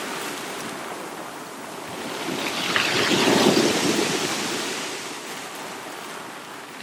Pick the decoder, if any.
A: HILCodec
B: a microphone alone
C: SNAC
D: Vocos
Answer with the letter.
B